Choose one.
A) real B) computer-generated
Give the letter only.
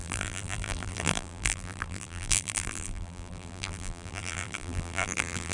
B